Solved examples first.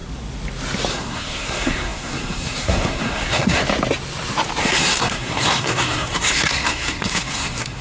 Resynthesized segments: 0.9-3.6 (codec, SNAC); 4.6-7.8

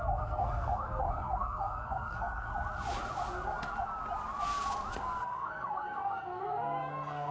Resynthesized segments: 0.0-2.5 (codec, SNAC); 5.0-7.3

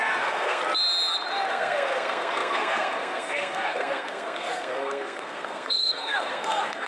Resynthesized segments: 0.0-0.6 (codec, SNAC); 1.5-6.9

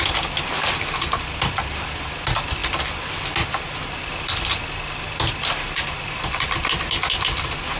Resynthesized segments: none